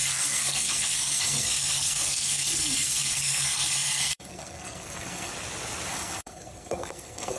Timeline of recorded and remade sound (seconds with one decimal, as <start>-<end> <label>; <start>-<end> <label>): 0.0-5.3 remade; 5.3-5.9 recorded; 5.9-7.4 remade